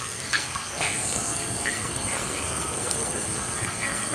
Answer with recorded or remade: remade